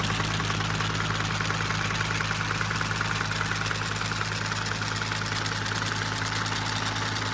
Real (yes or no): yes